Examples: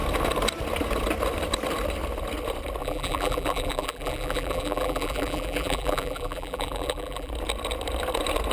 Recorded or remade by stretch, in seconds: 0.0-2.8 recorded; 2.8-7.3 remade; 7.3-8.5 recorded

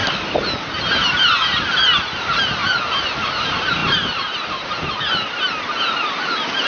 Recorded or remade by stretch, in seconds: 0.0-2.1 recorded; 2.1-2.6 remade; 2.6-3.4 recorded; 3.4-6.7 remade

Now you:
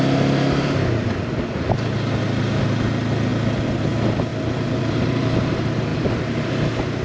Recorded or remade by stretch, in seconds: 0.0-4.3 recorded; 4.3-5.5 remade; 5.5-7.0 recorded